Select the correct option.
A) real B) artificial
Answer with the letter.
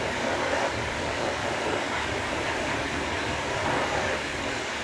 B